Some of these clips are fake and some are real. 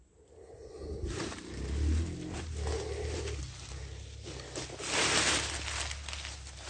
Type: real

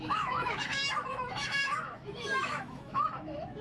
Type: fake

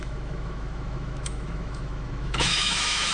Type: fake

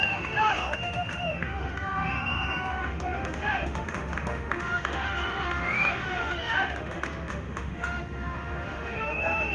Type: fake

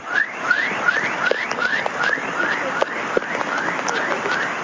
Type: real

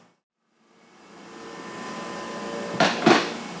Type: real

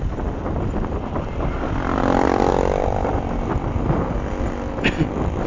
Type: real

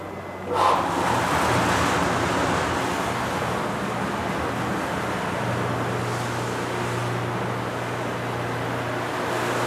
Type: real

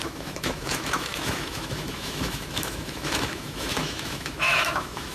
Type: fake